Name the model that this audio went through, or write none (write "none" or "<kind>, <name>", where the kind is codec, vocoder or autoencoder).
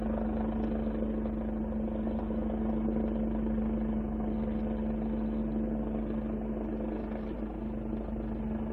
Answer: none